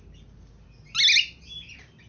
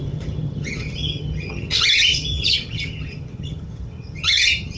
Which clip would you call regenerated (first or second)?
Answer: second